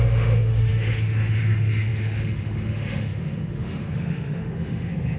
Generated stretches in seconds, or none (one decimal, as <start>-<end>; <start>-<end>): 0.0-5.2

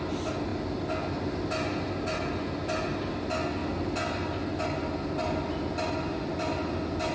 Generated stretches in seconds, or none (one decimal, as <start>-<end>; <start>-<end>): none

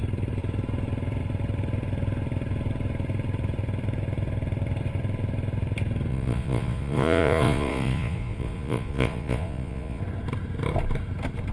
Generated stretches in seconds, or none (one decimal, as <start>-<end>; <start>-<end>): 6.1-10.0